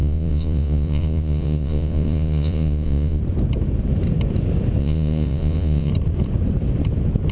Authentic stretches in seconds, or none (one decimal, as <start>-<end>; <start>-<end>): 3.2-4.8; 5.9-7.3